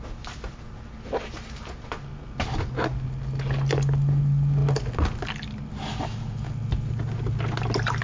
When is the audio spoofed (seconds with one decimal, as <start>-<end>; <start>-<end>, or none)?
none